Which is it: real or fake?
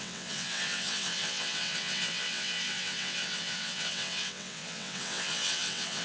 fake